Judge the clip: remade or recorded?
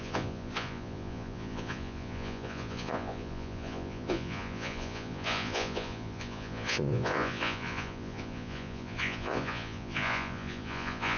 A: remade